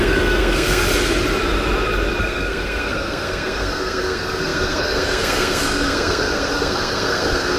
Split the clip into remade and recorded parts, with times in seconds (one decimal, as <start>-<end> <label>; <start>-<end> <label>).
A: 0.0-0.8 remade; 0.8-2.2 recorded; 2.2-7.6 remade

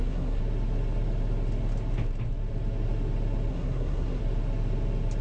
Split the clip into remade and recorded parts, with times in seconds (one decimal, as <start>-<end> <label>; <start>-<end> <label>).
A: 0.0-0.4 remade; 0.4-3.5 recorded; 3.5-4.2 remade; 4.2-5.2 recorded

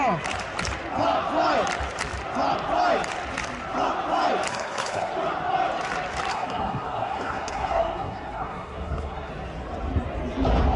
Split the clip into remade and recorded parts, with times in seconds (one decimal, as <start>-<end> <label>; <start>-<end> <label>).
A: 0.0-4.5 recorded; 4.5-5.1 remade; 5.1-6.3 recorded; 6.3-9.3 remade; 9.3-10.8 recorded

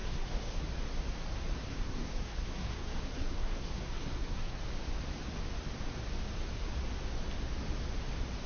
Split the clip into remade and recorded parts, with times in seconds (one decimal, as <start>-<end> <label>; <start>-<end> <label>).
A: 0.0-0.6 remade; 0.6-1.7 recorded; 1.7-4.6 remade; 4.6-8.5 recorded

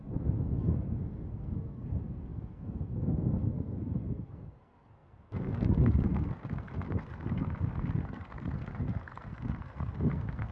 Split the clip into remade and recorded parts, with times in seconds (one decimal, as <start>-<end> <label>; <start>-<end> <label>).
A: 0.0-10.5 remade

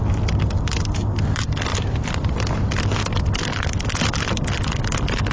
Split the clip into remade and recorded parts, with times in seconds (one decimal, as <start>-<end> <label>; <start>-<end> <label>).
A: 0.0-5.3 recorded